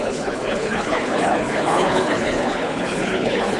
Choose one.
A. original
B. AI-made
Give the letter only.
B